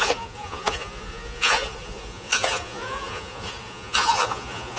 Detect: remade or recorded remade